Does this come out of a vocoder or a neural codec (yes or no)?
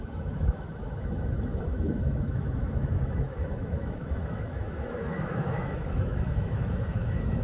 yes